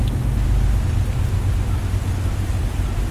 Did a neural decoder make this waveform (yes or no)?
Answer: no